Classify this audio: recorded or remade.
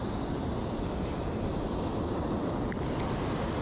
recorded